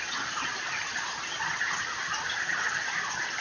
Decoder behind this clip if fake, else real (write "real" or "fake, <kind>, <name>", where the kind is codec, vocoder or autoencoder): real